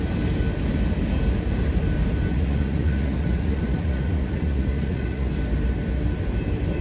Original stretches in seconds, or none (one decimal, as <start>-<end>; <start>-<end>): 0.0-2.3; 5.3-6.8